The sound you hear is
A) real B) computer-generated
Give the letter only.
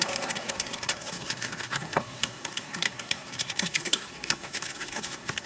B